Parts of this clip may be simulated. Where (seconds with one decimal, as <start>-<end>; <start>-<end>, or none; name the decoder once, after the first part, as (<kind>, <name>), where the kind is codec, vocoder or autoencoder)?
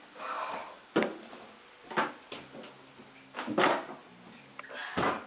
none